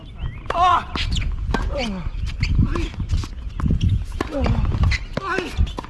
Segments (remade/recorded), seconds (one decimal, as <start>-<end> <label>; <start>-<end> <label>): 0.0-0.7 recorded; 0.7-1.2 remade; 1.2-5.9 recorded